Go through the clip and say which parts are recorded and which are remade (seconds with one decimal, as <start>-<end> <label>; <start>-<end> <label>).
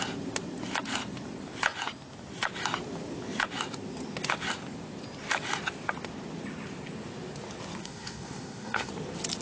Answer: 0.0-7.8 recorded; 7.8-8.9 remade; 8.9-9.4 recorded